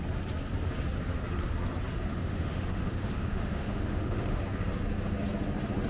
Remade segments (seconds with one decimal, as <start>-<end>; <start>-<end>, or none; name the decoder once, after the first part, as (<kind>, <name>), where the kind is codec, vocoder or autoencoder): 2.1-4.4 (autoencoder, DAC-VAE)